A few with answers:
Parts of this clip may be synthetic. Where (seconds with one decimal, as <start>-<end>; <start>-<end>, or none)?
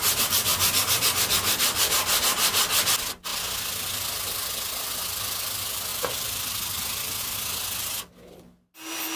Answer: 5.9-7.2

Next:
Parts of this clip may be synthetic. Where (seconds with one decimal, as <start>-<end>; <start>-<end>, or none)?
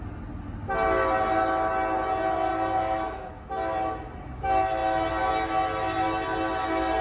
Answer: 2.5-3.3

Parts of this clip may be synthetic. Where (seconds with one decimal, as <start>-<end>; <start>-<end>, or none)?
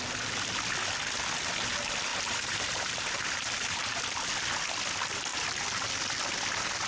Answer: 2.1-4.0; 5.3-5.9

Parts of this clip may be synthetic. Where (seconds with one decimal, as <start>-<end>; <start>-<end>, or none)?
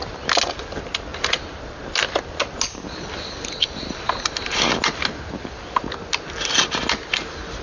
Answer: none